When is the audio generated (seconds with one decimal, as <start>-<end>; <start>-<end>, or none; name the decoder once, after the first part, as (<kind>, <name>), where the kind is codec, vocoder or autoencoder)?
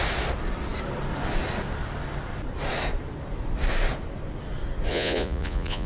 4.9-5.9 (vocoder, Vocos)